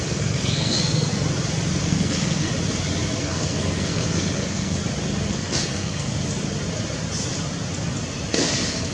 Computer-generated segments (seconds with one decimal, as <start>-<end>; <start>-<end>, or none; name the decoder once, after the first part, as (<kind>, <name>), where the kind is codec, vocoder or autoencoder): 0.0-1.1 (codec, SNAC); 1.8-2.5; 3.2-4.8; 5.3-6.1; 8.3-8.9